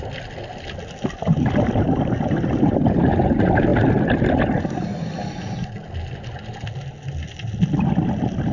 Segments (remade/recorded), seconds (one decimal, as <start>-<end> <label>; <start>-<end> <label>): 0.0-8.5 recorded